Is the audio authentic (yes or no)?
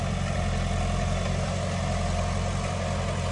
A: yes